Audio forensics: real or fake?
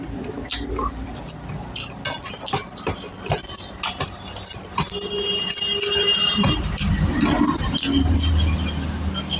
real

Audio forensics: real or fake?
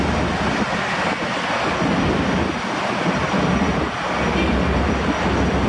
real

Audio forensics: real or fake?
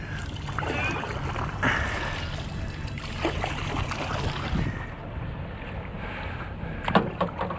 real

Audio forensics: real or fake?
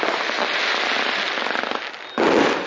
real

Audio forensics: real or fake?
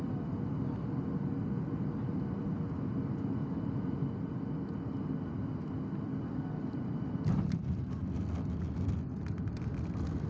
real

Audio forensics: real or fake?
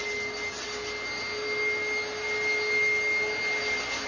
real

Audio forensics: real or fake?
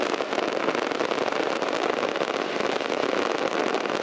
real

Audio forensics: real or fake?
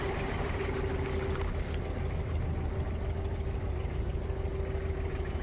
real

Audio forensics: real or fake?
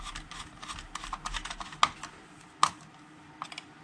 real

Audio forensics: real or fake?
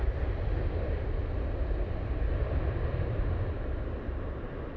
real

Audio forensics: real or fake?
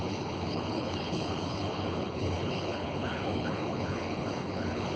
fake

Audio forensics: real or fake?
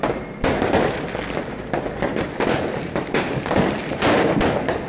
real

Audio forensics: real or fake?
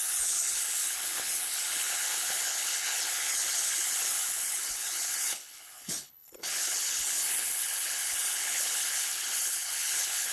fake